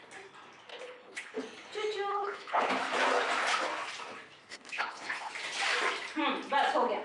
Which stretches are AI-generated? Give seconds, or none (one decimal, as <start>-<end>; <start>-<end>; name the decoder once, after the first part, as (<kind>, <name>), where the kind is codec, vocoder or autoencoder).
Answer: 0.7-1.4 (codec, HILCodec); 2.1-2.7; 4.5-5.3